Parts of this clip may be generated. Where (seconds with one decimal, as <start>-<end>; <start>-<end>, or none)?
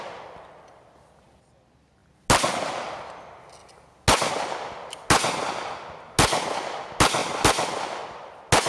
none